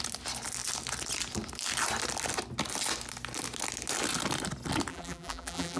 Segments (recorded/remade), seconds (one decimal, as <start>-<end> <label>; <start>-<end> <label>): 0.0-4.9 recorded; 4.9-5.8 remade